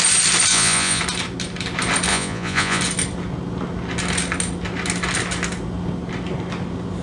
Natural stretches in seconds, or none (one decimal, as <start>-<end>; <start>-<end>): 0.0-0.5; 1.0-2.1; 2.8-7.0